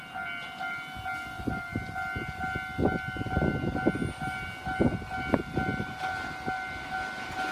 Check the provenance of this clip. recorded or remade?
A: recorded